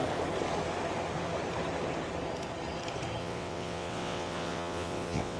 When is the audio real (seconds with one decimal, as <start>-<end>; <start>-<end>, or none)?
0.0-3.2